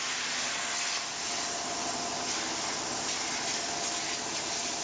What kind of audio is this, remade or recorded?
recorded